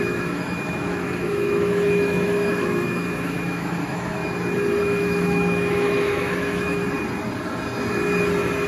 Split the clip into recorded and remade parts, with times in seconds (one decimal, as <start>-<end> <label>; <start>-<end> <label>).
0.0-4.2 remade; 4.2-4.8 recorded; 4.8-6.8 remade; 6.8-8.7 recorded